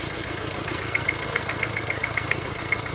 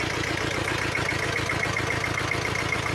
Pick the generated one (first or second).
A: first